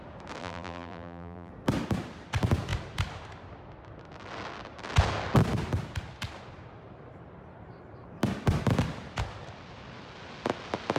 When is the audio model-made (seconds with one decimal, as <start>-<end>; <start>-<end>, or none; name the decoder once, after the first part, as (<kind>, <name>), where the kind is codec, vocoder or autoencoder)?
0.4-1.5 (vocoder, BigVGAN v2)